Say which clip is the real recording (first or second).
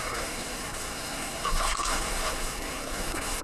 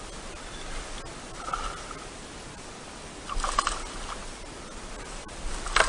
second